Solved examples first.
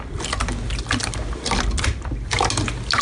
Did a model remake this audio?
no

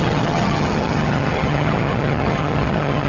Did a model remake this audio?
yes